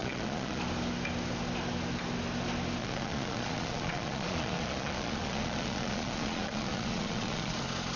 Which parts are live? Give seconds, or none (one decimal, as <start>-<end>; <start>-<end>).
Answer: 0.6-2.8; 7.6-8.0